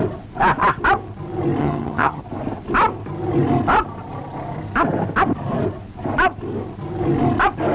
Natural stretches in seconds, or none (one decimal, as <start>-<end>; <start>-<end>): 0.0-1.6; 2.2-7.7